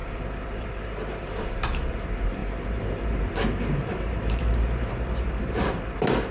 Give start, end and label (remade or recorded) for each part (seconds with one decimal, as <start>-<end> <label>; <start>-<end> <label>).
0.0-6.3 remade